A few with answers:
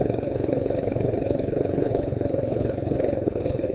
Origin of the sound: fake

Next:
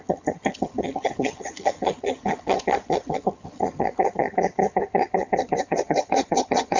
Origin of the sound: fake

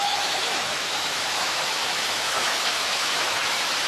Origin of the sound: fake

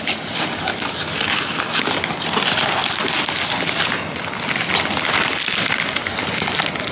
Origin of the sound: real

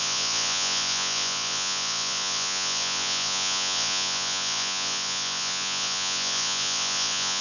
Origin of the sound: fake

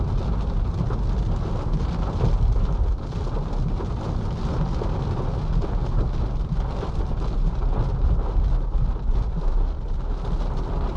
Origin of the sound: real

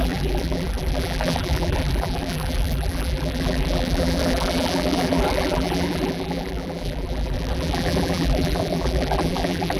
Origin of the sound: fake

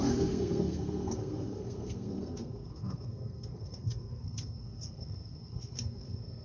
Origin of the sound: fake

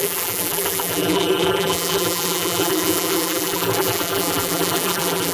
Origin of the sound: fake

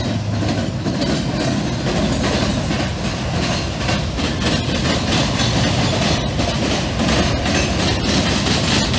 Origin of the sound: real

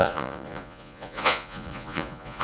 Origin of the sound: fake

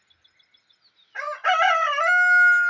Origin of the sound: real